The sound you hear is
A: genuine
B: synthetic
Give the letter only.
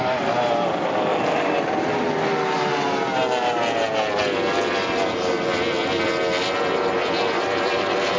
A